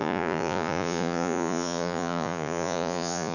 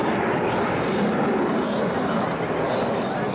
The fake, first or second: first